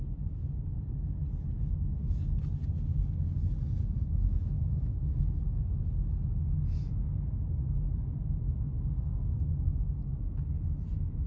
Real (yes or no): yes